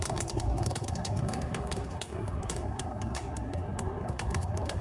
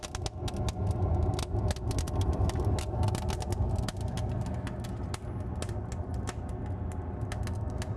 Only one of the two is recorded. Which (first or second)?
second